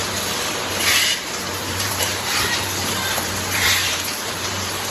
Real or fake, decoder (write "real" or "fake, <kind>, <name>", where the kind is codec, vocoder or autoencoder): fake, vocoder, BigVGAN v2